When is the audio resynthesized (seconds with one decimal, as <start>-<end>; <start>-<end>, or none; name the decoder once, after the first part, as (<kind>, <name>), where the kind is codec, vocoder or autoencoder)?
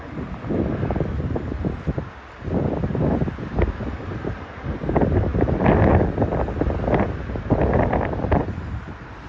none